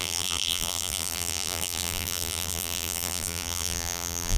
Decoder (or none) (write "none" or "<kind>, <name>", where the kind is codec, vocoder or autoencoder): vocoder, BigVGAN v2